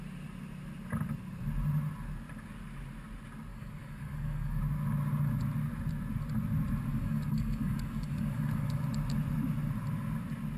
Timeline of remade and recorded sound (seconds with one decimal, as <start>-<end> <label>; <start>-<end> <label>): 0.0-3.5 recorded; 3.5-4.6 remade; 4.6-6.9 recorded; 6.9-8.8 remade; 8.8-10.6 recorded

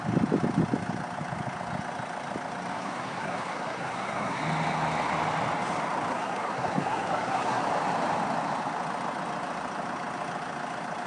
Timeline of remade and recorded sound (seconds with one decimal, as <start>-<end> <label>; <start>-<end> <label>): 0.0-2.7 recorded; 2.7-4.4 remade; 4.4-6.1 recorded; 6.1-7.6 remade; 7.6-11.1 recorded

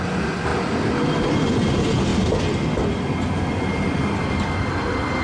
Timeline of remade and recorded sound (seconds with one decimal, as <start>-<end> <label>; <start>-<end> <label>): 0.0-5.2 recorded

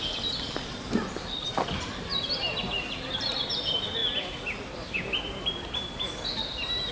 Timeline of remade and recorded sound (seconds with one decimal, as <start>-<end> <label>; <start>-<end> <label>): 0.0-2.1 remade; 2.1-3.2 recorded; 3.2-6.9 remade

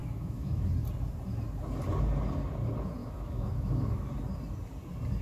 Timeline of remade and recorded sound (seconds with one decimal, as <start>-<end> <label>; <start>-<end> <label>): 0.0-0.7 remade; 0.7-3.0 recorded; 3.0-4.1 remade; 4.1-5.2 recorded

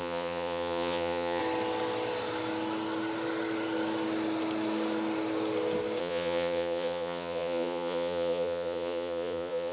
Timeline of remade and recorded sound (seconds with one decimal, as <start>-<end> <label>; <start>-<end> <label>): 0.0-1.4 remade; 1.4-6.0 recorded; 6.0-9.7 remade

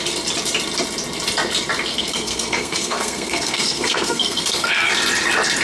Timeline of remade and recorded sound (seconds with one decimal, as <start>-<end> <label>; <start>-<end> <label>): 0.0-1.9 recorded; 1.9-4.9 remade; 4.9-5.6 recorded